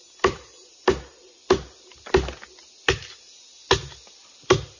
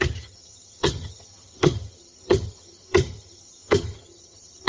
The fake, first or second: second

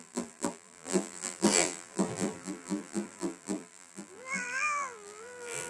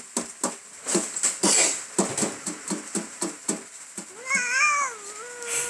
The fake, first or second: first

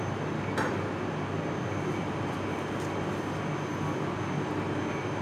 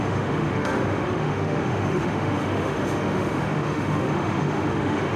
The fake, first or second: second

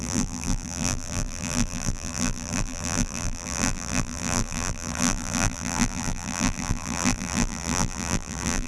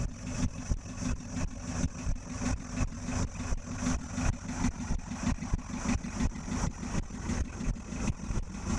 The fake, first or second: first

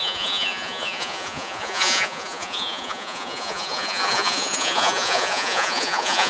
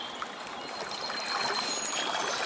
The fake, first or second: first